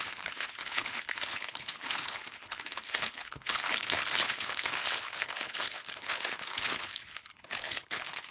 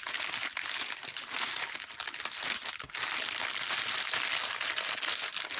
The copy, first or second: first